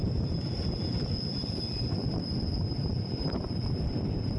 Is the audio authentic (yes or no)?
yes